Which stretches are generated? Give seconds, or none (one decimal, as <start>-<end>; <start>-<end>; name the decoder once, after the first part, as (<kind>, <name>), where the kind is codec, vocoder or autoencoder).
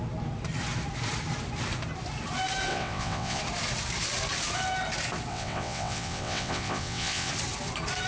2.7-3.4 (vocoder, WaveNeXt); 5.3-7.3